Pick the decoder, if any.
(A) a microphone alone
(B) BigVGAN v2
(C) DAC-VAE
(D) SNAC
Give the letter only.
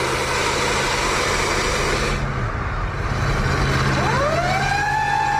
A